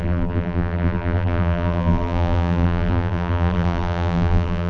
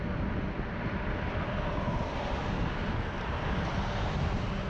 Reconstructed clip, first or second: first